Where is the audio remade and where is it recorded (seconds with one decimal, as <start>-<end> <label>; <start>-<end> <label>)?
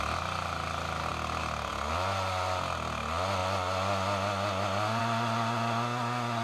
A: 0.0-6.4 recorded